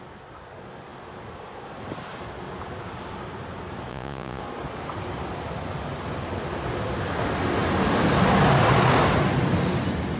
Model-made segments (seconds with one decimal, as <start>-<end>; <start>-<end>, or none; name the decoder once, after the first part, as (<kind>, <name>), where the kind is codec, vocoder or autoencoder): 3.9-4.4 (vocoder, Vocos)